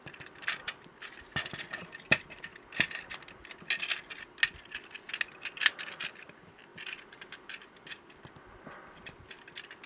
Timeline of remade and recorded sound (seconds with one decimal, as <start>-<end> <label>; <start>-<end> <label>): 0.0-9.9 recorded